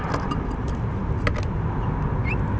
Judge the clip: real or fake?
real